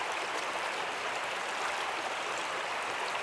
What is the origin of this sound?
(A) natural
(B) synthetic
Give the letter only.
A